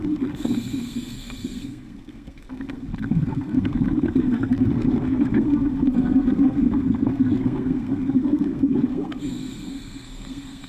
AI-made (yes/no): yes